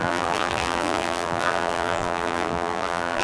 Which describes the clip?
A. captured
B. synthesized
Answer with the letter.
B